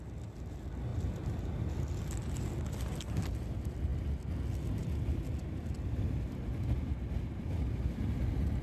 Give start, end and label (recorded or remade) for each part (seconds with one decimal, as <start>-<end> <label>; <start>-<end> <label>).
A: 0.0-8.6 recorded